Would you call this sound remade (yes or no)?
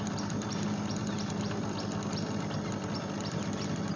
no